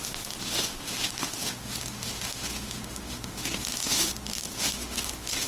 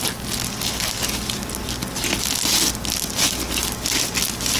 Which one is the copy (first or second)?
first